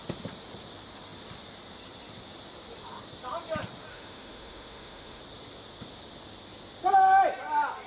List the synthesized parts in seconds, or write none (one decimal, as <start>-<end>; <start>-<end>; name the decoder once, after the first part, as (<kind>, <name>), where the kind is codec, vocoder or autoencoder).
3.9-5.2 (autoencoder, DAC-VAE)